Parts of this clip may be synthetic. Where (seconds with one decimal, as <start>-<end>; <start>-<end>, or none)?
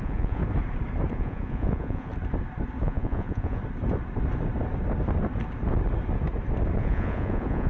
0.0-0.4; 1.1-2.1; 2.8-3.6; 6.8-7.7